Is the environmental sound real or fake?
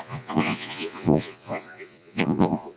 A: fake